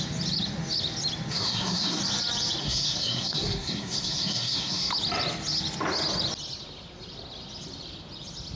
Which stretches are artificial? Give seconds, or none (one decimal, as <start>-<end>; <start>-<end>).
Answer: 1.3-2.0; 2.6-4.9